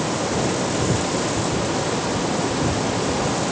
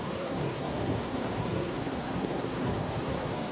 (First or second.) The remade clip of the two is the second